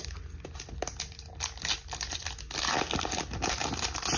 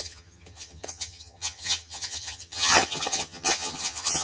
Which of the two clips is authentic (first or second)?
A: first